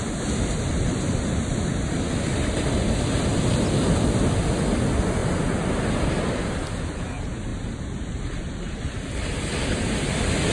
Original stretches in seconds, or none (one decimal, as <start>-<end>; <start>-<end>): 0.0-10.5